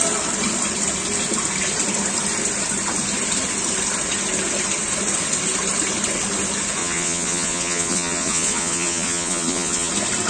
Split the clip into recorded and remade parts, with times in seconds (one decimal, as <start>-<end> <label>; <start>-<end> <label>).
0.0-6.8 recorded; 6.8-9.9 remade; 9.9-10.3 recorded